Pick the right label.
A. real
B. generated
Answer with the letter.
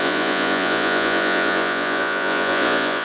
B